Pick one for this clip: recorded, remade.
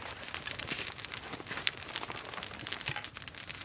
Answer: recorded